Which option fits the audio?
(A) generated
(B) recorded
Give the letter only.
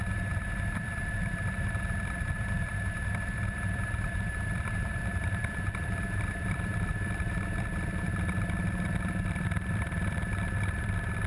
A